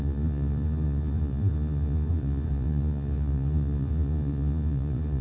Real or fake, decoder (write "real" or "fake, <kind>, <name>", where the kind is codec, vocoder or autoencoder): fake, vocoder, Vocos